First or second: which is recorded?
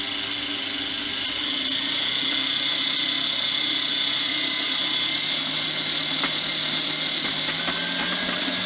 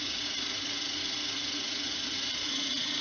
first